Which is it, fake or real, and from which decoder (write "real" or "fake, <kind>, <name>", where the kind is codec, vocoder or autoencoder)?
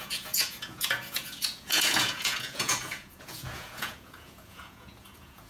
fake, vocoder, Vocos